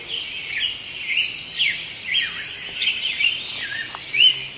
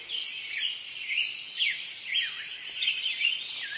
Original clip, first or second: first